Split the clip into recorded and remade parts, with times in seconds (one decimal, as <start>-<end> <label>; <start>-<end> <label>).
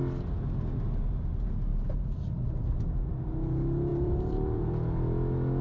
0.0-3.9 recorded; 3.9-4.7 remade; 4.7-5.6 recorded